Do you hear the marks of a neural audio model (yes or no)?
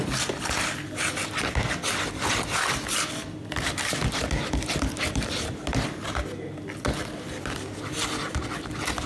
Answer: no